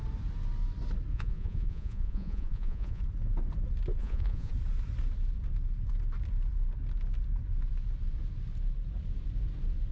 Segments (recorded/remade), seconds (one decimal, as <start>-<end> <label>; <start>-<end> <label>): 0.0-1.1 recorded; 1.1-3.0 remade; 3.0-4.0 recorded; 4.0-4.5 remade; 4.5-9.9 recorded